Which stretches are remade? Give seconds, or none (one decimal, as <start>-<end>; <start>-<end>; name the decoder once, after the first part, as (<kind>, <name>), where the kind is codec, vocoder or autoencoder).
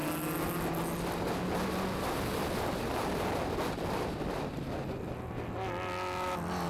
none